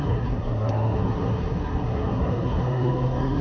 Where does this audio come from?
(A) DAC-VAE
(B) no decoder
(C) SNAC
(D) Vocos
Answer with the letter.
C